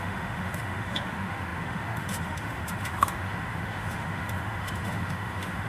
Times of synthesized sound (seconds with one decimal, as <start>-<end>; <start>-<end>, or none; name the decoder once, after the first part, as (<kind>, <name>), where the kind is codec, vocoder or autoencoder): 0.0-5.7 (autoencoder, DAC-VAE)